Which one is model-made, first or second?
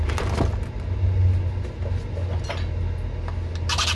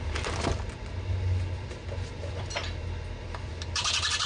second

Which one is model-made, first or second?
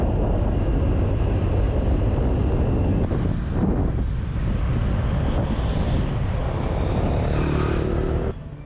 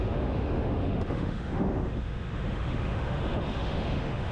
second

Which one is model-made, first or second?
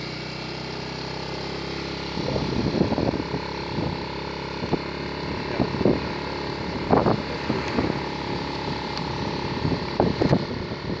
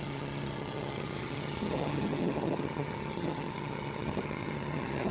second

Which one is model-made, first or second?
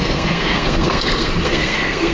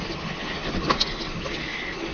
first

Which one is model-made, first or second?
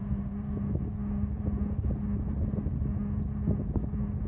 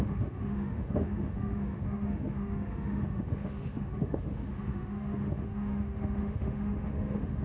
second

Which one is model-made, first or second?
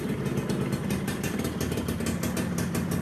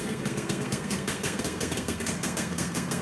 second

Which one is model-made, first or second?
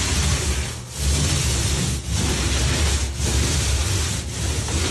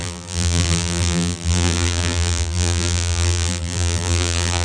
second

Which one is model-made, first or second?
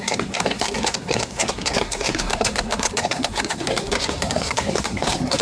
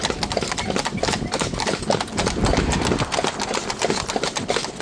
first